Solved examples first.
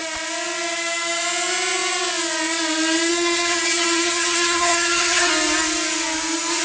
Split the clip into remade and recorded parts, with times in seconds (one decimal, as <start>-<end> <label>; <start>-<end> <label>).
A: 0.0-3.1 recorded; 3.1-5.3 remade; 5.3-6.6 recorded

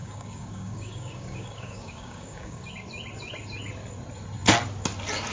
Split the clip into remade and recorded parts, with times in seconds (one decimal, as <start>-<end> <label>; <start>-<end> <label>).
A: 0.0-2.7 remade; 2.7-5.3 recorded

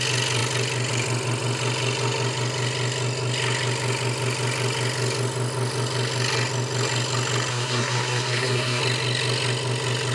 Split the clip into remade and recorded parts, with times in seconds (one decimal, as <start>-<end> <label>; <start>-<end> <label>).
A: 0.0-7.5 recorded; 7.5-8.8 remade; 8.8-10.1 recorded

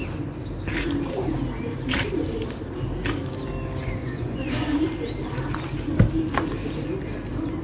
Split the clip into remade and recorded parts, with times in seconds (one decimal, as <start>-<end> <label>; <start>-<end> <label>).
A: 0.0-4.0 recorded; 4.0-4.8 remade; 4.8-7.6 recorded

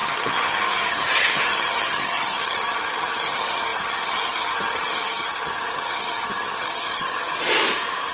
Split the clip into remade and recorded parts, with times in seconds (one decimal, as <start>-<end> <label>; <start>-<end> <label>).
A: 0.0-7.3 remade; 7.3-8.1 recorded